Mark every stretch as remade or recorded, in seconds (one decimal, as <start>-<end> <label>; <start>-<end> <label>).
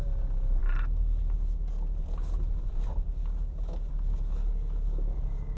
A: 0.0-5.6 recorded